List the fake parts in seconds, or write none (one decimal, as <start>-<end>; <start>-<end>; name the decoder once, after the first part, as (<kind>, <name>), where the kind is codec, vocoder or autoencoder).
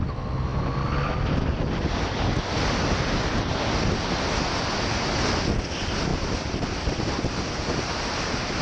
6.1-7.0 (vocoder, BigVGAN v2)